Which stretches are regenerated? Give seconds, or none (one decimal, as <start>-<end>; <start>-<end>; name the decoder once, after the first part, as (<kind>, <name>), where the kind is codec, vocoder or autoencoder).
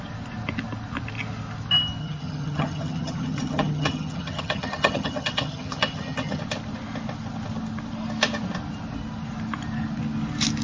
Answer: 2.0-6.4 (vocoder, HiFi-GAN)